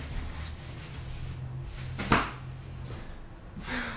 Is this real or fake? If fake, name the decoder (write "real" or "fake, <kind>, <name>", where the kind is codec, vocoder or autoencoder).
real